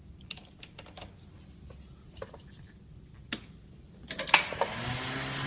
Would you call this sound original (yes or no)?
yes